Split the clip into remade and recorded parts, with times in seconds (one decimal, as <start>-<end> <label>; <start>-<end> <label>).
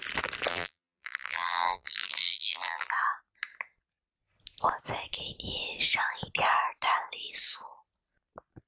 0.0-0.5 recorded; 0.5-2.9 remade; 2.9-8.7 recorded